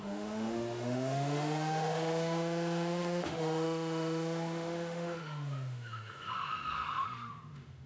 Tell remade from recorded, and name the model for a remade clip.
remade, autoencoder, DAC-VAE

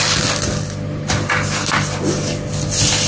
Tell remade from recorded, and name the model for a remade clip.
recorded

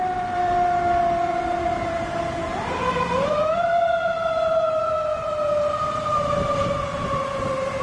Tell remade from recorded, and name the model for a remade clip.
remade, vocoder, BigVGAN v2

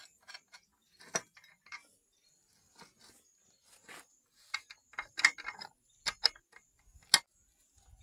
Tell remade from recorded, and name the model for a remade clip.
recorded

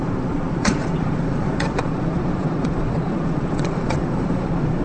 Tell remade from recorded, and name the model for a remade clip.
remade, vocoder, Vocos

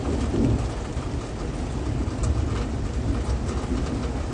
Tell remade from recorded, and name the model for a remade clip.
recorded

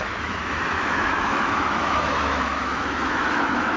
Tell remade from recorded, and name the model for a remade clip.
remade, autoencoder, DAC-VAE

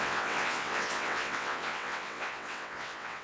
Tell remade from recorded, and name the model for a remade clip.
remade, vocoder, WaveNeXt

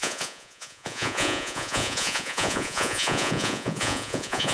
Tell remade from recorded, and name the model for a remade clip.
remade, vocoder, Vocos